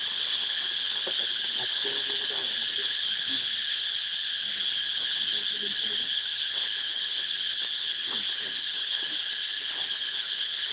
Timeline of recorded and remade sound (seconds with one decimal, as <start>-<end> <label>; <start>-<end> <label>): 0.0-10.7 remade